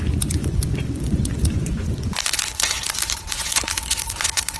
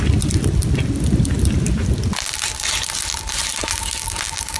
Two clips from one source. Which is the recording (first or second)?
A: second